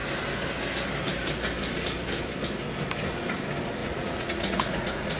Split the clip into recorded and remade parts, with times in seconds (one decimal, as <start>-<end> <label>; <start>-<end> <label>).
0.0-3.8 recorded; 3.8-5.2 remade